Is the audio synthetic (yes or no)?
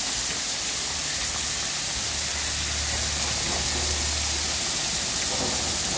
no